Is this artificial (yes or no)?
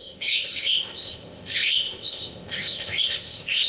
yes